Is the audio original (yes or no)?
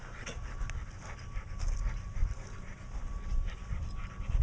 yes